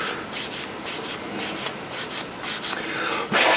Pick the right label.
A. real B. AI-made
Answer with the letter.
A